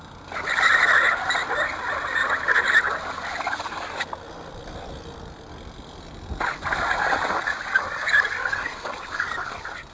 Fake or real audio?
real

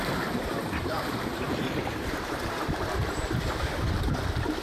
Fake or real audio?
fake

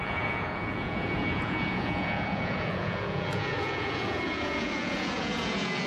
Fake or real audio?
fake